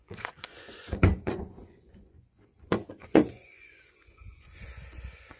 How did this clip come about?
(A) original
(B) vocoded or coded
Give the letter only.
B